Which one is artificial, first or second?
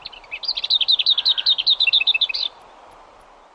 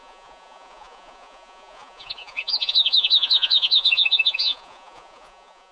second